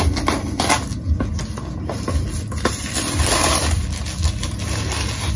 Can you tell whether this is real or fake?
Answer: real